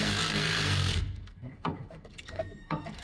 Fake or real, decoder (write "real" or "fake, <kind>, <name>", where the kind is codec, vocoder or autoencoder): fake, codec, SNAC